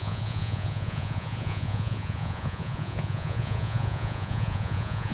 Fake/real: fake